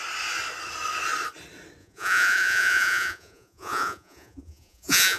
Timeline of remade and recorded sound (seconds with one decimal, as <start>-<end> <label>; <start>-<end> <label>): 0.0-1.8 recorded; 1.8-5.2 remade

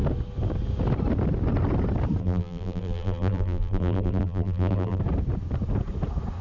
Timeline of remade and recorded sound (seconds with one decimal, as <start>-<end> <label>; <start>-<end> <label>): 0.0-2.2 recorded; 2.2-5.0 remade; 5.0-6.4 recorded

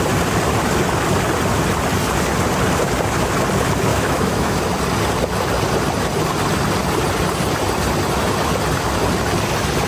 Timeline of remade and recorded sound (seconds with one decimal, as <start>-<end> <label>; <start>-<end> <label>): 0.0-3.9 recorded; 3.9-4.6 remade; 4.6-9.9 recorded